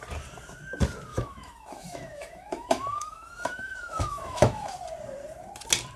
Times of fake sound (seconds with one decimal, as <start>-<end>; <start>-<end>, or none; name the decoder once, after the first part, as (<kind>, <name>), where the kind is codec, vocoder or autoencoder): 1.1-4.7 (autoencoder, DAC-VAE)